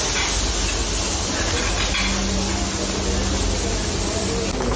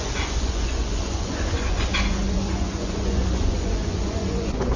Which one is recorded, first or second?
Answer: first